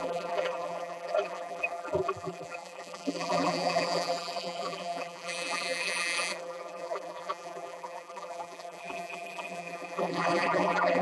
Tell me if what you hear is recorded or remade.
remade